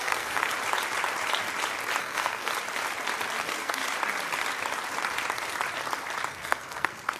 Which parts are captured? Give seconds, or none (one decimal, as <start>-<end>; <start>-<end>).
0.5-2.0; 2.5-3.4; 3.8-6.3